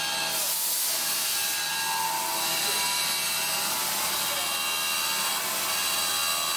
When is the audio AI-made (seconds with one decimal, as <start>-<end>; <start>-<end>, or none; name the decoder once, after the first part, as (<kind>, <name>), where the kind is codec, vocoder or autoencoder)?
none